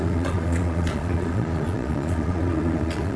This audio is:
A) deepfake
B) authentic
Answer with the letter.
A